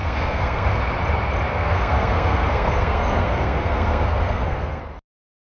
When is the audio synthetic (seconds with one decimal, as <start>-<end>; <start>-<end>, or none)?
0.0-0.8; 1.5-4.8